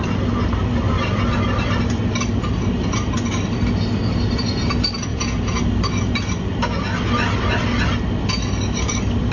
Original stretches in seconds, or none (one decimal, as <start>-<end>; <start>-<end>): 0.0-5.1; 5.6-9.3